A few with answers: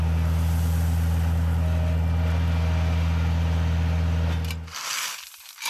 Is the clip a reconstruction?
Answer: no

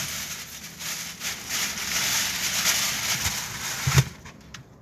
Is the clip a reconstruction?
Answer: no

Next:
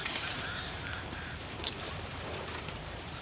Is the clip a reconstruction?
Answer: yes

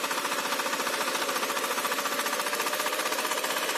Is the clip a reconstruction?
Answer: no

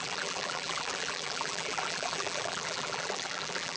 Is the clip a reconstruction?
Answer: yes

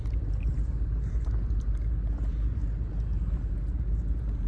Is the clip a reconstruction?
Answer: yes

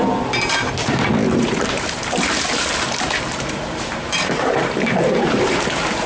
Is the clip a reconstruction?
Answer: yes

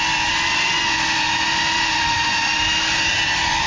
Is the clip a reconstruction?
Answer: yes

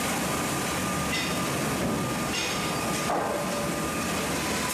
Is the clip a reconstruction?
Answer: no